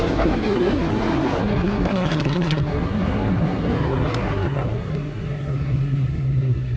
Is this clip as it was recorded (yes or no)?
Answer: no